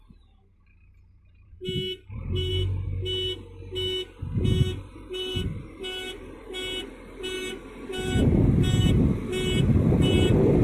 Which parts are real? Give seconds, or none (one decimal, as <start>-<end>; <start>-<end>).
2.5-4.8